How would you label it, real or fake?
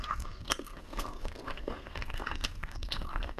fake